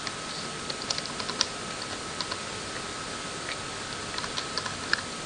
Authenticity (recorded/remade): recorded